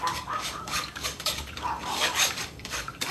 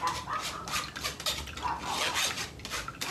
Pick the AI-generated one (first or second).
first